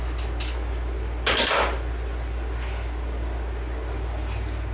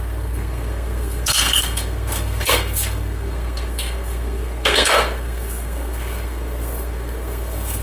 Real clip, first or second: first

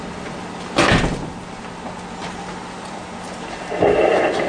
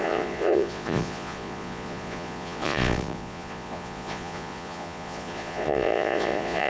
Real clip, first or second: first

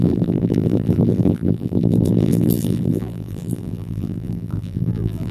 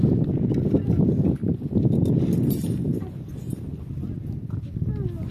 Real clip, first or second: second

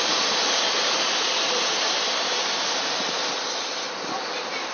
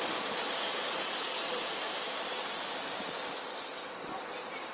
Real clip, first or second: second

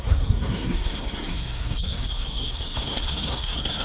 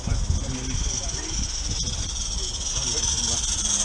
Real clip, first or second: second